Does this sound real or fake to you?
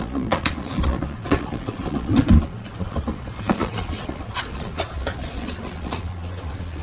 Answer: fake